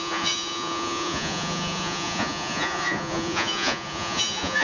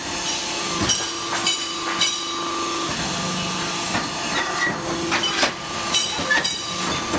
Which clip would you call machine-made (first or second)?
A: first